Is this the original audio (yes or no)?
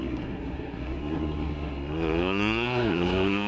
no